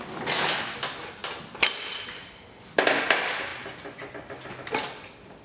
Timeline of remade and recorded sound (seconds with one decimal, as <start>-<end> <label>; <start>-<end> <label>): 0.0-1.2 recorded; 1.2-3.1 remade; 3.1-5.4 recorded